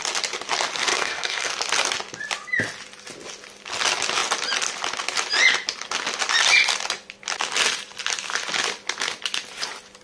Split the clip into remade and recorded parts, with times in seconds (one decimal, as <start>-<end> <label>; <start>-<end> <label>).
0.0-0.9 recorded; 0.9-1.5 remade; 1.5-10.0 recorded